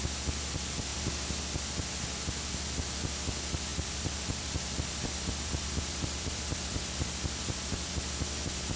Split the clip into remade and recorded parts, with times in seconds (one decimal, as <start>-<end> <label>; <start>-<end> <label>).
0.0-0.9 recorded; 0.9-1.4 remade; 1.4-3.7 recorded; 3.7-7.9 remade; 7.9-8.8 recorded